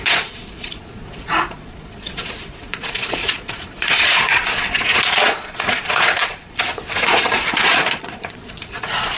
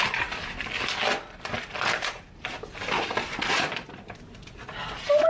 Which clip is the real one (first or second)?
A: second